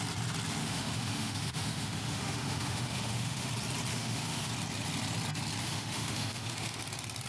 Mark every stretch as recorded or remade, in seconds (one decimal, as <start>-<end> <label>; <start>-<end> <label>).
0.0-0.6 recorded; 0.6-3.5 remade; 3.5-3.9 recorded; 3.9-4.5 remade; 4.5-5.6 recorded; 5.6-6.8 remade; 6.8-7.3 recorded